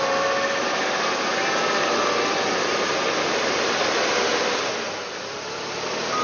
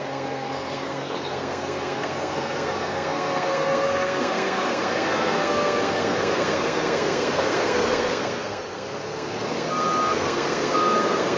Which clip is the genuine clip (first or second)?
first